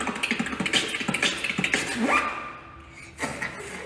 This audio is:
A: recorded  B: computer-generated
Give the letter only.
A